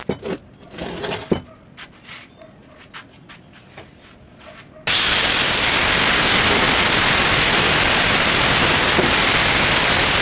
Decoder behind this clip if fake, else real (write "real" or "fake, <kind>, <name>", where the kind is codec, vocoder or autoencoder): real